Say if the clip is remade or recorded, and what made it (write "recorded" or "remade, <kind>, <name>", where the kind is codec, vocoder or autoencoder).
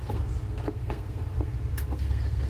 remade, codec, SNAC